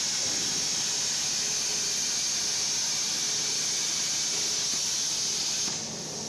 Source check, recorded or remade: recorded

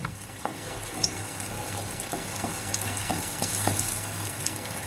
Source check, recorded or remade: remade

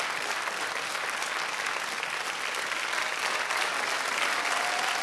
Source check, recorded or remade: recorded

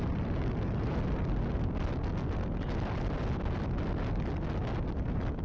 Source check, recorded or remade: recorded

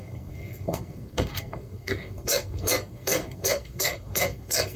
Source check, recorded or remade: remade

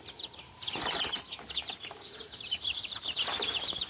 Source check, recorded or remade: recorded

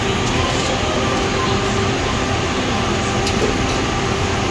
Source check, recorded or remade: recorded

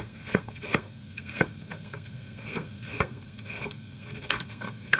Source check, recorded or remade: remade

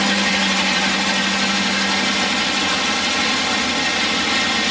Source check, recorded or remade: recorded